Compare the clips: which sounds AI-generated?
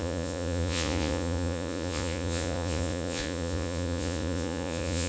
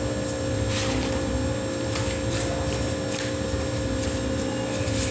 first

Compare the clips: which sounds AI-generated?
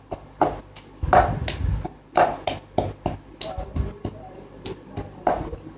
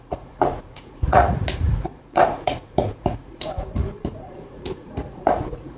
second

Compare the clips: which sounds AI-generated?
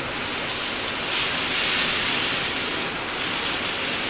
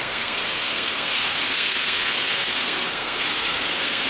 second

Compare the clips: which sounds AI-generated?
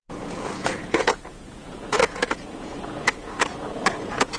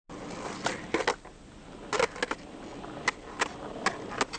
first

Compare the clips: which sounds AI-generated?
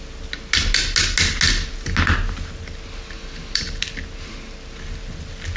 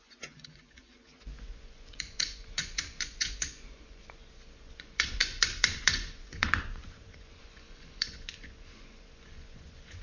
second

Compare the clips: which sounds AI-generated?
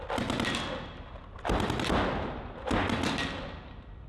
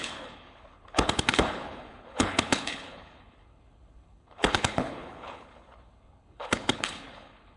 second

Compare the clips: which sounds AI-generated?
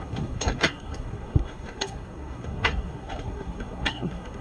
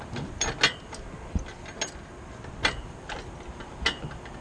first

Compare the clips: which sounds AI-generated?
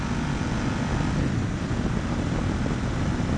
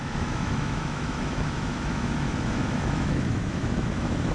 second